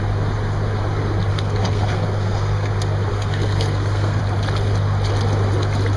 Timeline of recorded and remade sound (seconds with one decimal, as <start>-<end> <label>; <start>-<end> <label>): 0.0-1.3 recorded; 1.3-2.7 remade; 2.7-3.1 recorded; 3.1-4.2 remade; 4.2-6.0 recorded

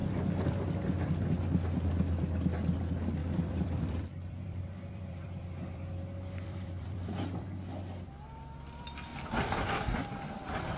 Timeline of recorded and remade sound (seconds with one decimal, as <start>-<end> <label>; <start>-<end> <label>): 0.0-3.2 recorded; 3.2-7.8 remade; 7.8-9.1 recorded; 9.1-10.2 remade; 10.2-10.8 recorded

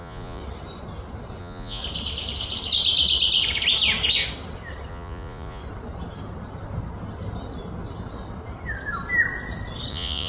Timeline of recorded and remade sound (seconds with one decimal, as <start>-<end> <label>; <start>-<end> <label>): 0.0-0.4 remade; 0.4-1.4 recorded; 1.4-1.8 remade; 1.8-4.9 recorded; 4.9-5.6 remade; 5.6-9.9 recorded; 9.9-10.3 remade